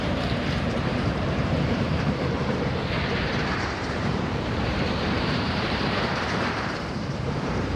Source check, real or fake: fake